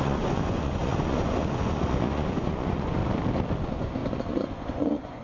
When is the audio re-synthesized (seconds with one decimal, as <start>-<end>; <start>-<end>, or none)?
0.0-3.0; 3.6-5.2